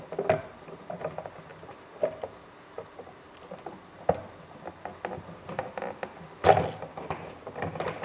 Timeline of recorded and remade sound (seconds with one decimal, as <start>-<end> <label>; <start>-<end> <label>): 0.0-1.5 recorded; 1.5-4.4 remade; 4.4-8.0 recorded